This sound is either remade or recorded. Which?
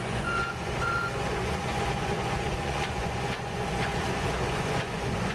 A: remade